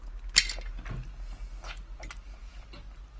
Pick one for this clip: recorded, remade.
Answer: recorded